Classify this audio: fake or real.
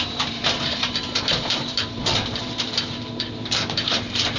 fake